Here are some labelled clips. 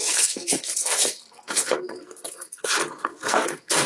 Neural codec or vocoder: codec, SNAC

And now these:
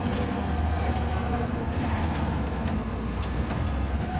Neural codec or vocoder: codec, SNAC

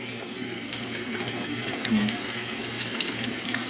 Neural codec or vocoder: codec, SNAC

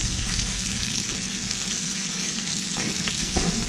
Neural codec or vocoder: codec, SNAC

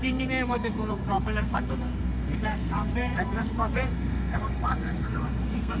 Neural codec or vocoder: codec, SNAC